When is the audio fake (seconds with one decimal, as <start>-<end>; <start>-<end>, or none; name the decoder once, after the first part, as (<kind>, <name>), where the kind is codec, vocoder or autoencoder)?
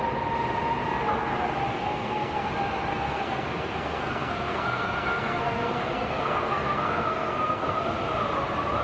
1.7-2.5 (codec, SNAC); 2.9-7.8